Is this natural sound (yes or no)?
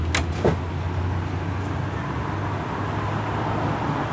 yes